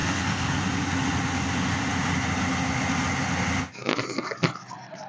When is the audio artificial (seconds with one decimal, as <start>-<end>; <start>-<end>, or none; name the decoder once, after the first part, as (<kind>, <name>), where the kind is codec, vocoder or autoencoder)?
0.0-0.6 (codec, SNAC)